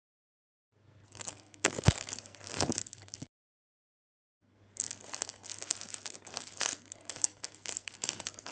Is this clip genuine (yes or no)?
no